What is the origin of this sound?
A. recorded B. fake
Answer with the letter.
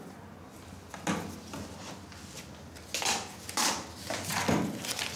A